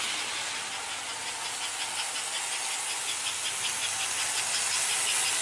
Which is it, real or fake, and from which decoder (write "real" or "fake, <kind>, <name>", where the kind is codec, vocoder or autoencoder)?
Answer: real